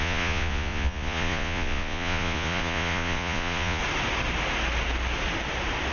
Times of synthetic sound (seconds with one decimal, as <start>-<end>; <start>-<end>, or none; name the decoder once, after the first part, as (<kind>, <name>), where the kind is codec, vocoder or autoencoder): 0.0-3.8 (vocoder, Vocos)